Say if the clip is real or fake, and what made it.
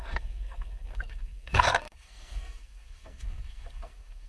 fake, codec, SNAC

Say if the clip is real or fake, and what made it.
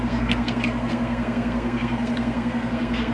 fake, codec, SNAC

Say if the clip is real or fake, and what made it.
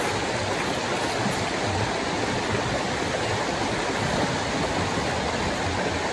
real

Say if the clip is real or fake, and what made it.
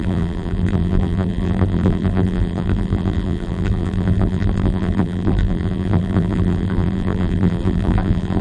fake, vocoder, BigVGAN v2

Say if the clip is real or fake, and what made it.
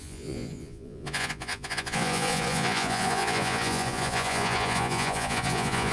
fake, vocoder, Vocos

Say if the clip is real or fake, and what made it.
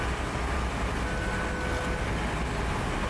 real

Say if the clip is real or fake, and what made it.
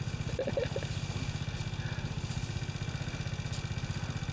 real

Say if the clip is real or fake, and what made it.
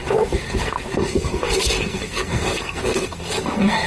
fake, codec, SNAC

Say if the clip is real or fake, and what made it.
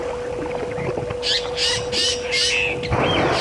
real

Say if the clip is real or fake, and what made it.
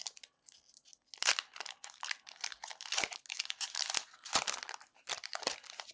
real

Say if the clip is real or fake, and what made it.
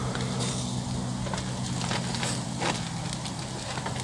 real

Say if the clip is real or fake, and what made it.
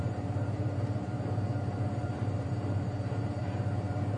fake, vocoder, BigVGAN v2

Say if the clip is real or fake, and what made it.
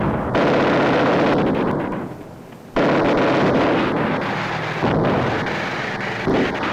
real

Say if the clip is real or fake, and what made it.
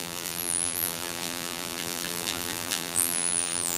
fake, vocoder, BigVGAN v2